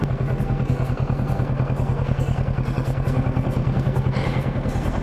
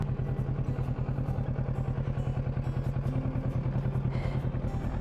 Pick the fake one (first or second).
first